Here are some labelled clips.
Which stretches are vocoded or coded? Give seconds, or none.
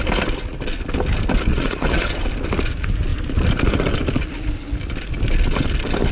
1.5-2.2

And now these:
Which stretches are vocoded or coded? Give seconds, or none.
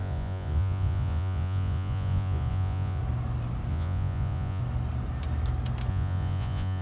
0.0-3.0; 3.7-4.6; 5.9-6.8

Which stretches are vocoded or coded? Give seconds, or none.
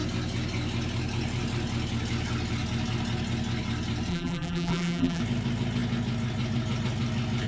4.1-5.2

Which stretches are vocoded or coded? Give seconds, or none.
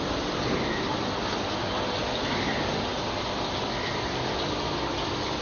2.0-2.5; 2.9-4.3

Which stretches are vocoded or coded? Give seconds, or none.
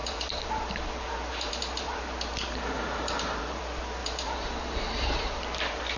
0.0-3.6; 4.0-6.0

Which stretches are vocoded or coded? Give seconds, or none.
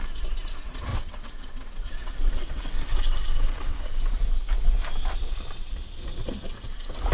0.9-4.0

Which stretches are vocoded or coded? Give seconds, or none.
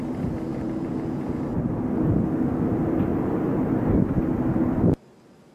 0.5-1.4